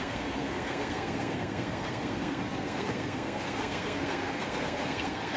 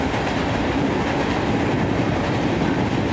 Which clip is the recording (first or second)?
second